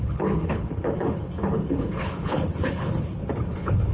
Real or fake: fake